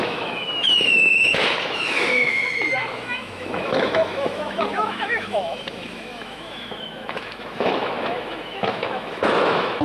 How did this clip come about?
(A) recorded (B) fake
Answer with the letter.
B